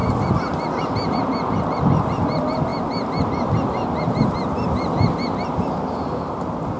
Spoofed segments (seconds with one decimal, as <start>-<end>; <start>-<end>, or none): none